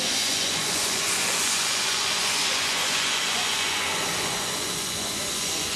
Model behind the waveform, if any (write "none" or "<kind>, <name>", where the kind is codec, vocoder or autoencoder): vocoder, Vocos